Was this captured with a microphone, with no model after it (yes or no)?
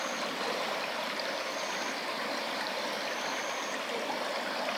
yes